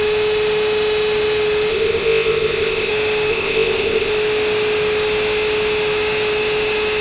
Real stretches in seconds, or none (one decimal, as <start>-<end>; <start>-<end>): 0.0-1.7; 2.9-3.3; 4.1-7.0